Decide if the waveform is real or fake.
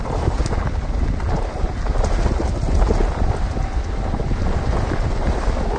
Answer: real